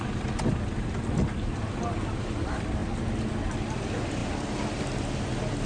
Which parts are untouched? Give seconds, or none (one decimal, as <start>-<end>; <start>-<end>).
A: 0.0-5.7